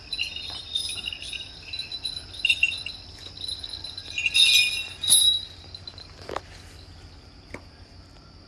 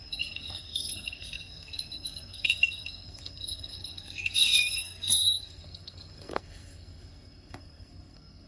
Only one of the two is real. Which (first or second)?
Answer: first